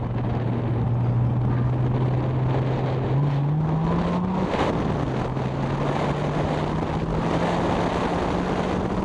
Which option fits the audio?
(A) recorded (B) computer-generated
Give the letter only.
A